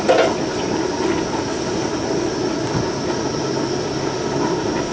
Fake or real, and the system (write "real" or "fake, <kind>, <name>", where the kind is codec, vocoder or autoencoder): real